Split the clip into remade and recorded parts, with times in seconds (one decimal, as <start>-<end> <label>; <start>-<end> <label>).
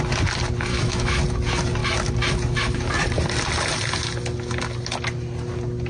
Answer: 0.0-0.7 recorded; 0.7-1.2 remade; 1.2-5.9 recorded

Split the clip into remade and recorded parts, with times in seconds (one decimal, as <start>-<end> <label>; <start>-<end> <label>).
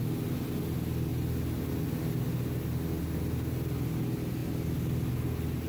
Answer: 0.0-5.7 recorded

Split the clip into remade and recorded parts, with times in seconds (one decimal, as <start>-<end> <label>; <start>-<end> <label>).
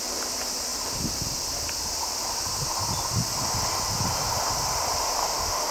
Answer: 0.0-5.2 recorded; 5.2-5.7 remade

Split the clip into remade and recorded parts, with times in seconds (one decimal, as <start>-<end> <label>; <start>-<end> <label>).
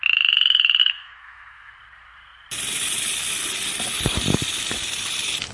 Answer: 0.0-0.8 recorded; 0.8-1.7 remade; 1.7-5.5 recorded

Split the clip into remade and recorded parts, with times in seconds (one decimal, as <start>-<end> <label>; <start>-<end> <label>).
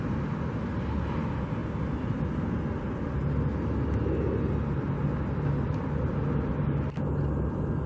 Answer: 0.0-7.9 recorded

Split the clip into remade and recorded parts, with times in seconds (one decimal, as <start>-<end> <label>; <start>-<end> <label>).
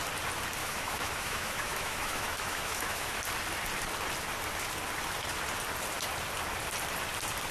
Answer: 0.0-0.6 recorded; 0.6-3.2 remade; 3.2-7.5 recorded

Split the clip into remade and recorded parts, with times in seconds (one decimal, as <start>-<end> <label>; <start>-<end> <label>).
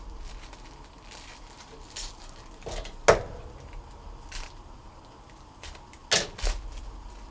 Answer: 0.0-7.3 recorded